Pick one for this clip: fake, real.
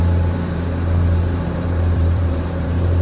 fake